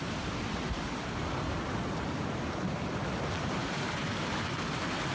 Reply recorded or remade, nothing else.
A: recorded